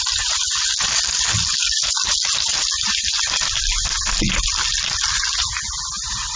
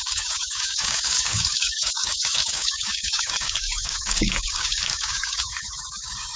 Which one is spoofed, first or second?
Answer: second